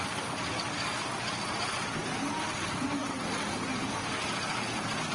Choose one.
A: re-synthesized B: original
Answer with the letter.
B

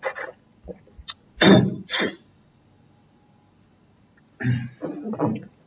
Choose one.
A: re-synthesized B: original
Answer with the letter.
B